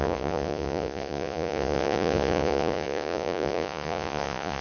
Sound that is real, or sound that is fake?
fake